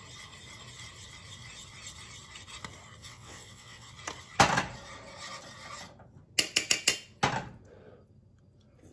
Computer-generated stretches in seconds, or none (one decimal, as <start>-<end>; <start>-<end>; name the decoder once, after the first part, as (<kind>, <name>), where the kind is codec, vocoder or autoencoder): 3.0-3.9 (vocoder, WaveNeXt)